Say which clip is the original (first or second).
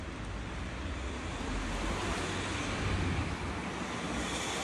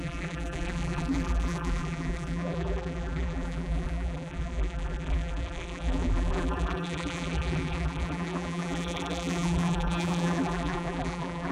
first